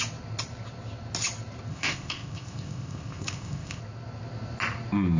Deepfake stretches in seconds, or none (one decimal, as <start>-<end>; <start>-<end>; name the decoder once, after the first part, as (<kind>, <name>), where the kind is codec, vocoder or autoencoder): 1.7-3.8 (codec, ZipCodec)